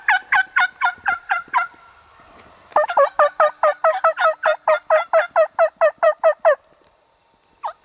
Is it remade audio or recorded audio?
remade